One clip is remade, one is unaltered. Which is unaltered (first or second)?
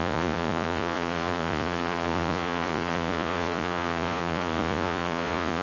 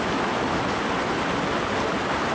second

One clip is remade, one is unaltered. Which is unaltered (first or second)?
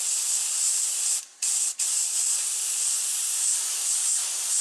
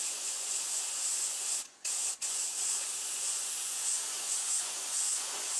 first